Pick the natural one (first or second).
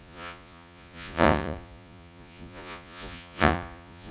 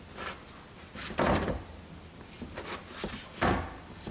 second